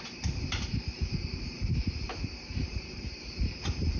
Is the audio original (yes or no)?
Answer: no